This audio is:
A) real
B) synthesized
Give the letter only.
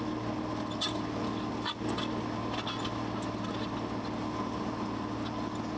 A